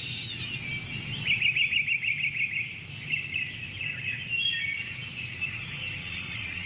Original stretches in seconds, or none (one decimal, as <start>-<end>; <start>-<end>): 0.0-6.0